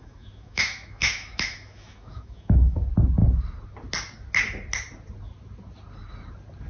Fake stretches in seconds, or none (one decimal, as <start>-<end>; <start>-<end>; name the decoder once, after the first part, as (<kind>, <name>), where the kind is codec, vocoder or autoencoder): 0.0-2.8 (autoencoder, DAC-VAE)